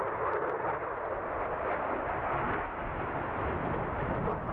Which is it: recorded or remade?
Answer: recorded